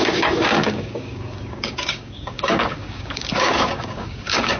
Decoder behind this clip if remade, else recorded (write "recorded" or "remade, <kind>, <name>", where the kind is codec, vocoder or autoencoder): remade, codec, DAC